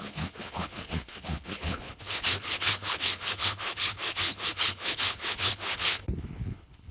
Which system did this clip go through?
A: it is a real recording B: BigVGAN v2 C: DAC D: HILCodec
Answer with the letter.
D